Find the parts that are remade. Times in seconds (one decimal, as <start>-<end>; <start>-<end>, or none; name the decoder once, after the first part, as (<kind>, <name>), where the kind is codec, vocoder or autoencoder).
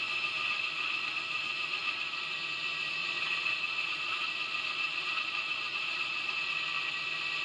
3.0-4.3 (vocoder, Vocos); 5.7-6.3